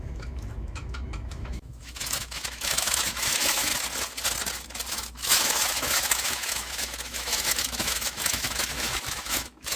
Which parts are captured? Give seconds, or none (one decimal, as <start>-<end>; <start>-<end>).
3.7-4.9